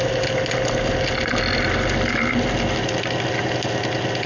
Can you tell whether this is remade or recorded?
recorded